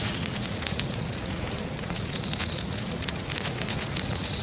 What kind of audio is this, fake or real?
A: fake